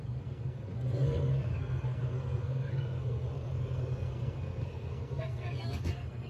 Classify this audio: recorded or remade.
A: remade